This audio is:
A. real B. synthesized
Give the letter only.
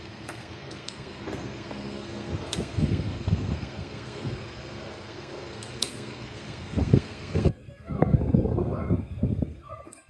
B